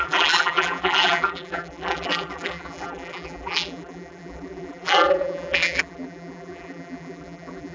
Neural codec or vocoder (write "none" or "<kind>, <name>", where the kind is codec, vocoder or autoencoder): vocoder, BigVGAN v2